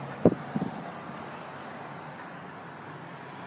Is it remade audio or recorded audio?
recorded